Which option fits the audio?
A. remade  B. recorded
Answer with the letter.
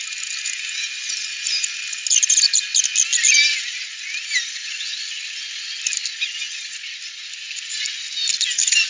B